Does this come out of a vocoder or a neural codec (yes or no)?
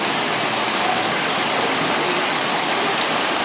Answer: no